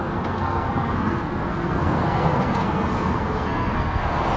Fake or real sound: fake